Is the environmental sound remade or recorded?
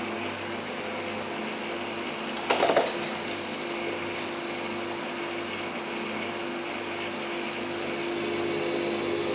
recorded